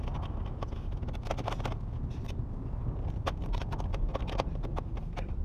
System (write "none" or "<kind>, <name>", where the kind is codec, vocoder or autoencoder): none